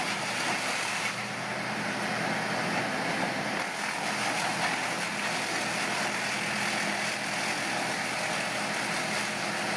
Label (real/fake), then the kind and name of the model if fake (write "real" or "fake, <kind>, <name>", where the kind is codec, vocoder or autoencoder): real